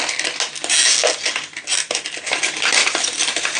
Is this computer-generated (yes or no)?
no